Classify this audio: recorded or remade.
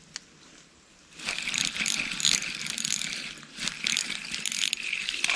recorded